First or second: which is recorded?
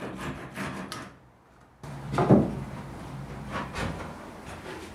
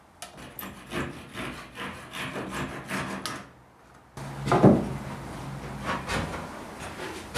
second